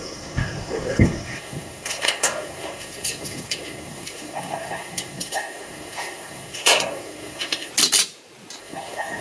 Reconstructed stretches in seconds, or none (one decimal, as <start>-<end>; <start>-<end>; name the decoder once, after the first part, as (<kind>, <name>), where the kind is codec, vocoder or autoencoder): 0.0-7.7 (codec, SNAC); 8.6-9.2